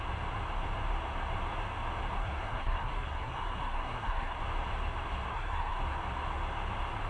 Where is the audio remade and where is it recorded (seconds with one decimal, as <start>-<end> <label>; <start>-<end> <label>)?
0.0-2.2 recorded; 2.2-4.4 remade; 4.4-5.3 recorded; 5.3-5.8 remade; 5.8-7.1 recorded